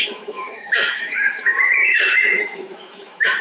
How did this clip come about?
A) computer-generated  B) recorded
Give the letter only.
A